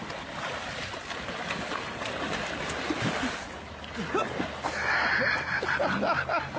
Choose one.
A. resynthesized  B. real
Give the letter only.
B